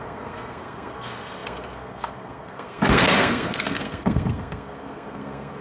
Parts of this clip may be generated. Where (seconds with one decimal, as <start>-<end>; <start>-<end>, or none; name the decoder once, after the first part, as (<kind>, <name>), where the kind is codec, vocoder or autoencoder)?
0.0-5.6 (codec, SNAC)